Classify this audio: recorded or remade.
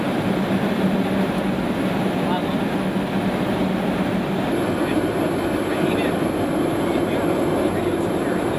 recorded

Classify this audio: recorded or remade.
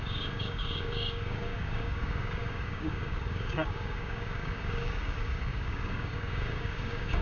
remade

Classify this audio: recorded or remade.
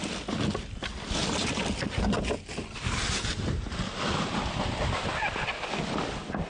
recorded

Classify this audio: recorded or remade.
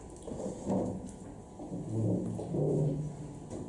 recorded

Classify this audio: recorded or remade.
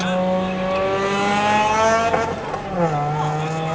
recorded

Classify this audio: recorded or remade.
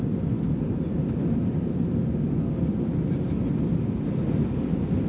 recorded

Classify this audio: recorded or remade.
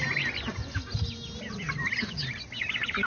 recorded